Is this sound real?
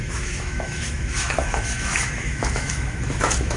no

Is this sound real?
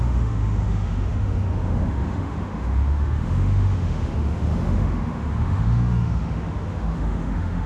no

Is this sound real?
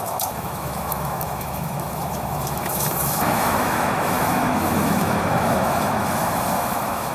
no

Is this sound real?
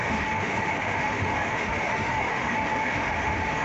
no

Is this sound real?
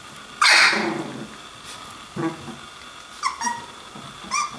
yes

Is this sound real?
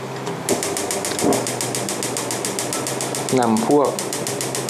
yes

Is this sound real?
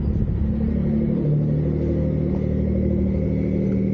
yes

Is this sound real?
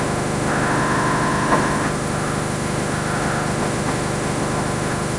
no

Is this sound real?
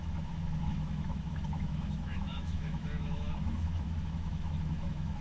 no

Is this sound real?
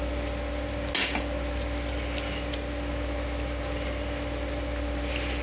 yes